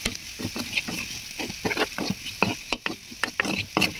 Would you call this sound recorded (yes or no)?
yes